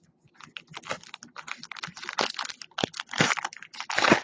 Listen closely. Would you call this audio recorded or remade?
recorded